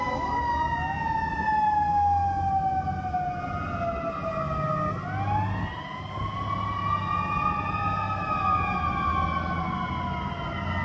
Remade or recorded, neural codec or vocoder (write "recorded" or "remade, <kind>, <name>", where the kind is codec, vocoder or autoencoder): recorded